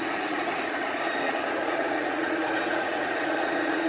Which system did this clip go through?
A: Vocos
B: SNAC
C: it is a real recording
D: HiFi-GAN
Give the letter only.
A